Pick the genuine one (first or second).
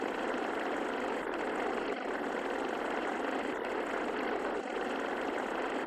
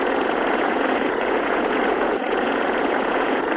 first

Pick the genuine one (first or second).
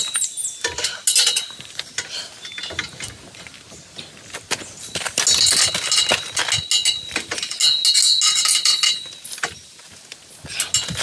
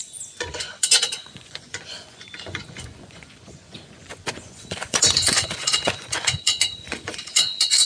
first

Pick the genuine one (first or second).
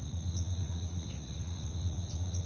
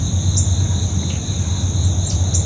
second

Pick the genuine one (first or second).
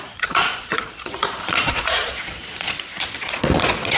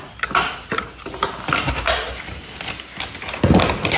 second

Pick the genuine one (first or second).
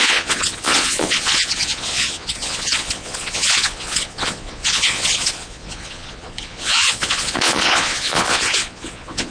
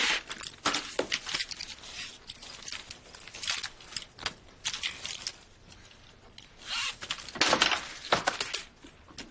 second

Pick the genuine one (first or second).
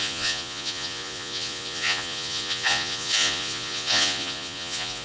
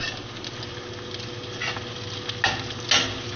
second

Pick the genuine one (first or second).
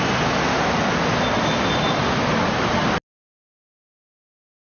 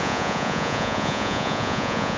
first